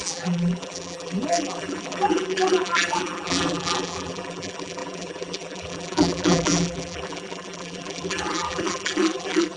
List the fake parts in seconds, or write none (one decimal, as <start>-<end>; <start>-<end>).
0.0-9.6